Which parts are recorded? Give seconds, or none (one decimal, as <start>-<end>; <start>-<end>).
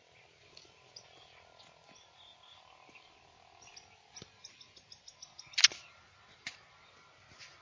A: 0.0-7.6